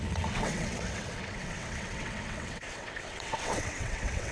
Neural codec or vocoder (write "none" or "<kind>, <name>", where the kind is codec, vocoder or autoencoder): vocoder, WaveNeXt